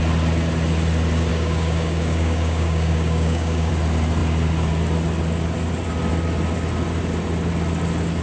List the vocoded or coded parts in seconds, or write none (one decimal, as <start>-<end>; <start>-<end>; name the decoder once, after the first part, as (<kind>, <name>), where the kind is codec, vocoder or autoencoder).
1.3-3.7 (codec, DAC)